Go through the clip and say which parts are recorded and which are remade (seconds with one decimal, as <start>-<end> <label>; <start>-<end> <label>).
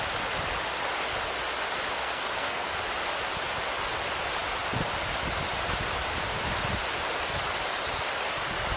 0.0-2.0 recorded; 2.0-2.7 remade; 2.7-8.8 recorded